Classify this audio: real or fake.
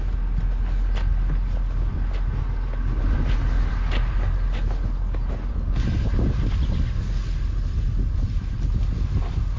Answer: real